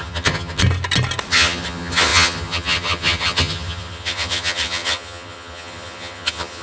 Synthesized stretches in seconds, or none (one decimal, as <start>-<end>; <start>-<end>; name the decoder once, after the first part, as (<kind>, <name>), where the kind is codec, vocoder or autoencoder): 0.0-0.6 (vocoder, HiFi-GAN); 1.3-6.6